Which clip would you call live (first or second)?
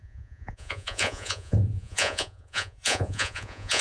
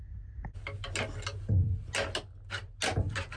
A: second